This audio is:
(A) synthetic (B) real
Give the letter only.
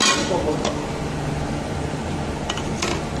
B